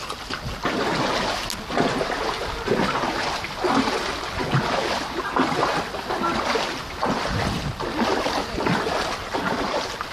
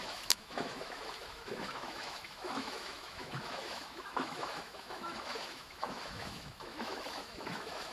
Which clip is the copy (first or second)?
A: second